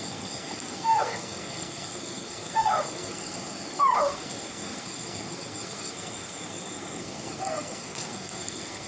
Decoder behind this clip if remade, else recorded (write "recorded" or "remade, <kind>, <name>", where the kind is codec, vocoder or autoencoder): remade, codec, SNAC